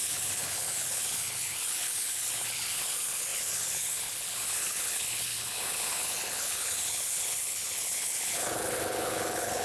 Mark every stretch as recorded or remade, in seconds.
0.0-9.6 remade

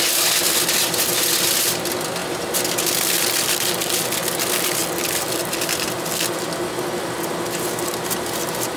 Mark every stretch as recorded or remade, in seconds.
0.0-8.8 recorded

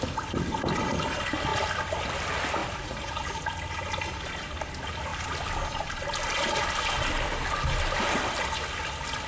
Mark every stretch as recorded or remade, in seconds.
0.0-2.6 recorded; 2.6-3.2 remade; 3.2-9.3 recorded